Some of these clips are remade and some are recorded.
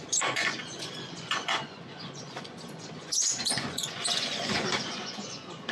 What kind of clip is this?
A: remade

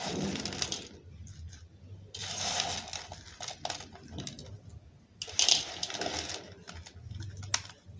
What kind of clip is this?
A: recorded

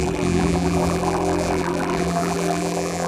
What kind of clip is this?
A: remade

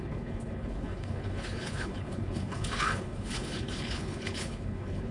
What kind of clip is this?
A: remade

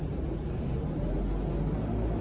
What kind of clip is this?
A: recorded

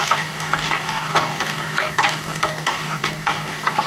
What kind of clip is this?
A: remade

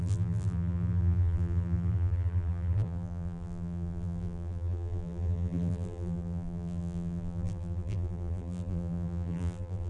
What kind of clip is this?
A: remade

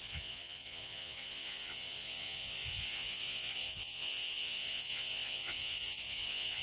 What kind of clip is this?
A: remade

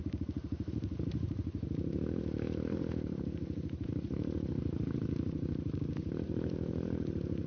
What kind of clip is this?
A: remade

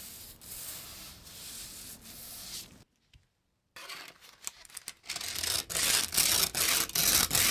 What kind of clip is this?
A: recorded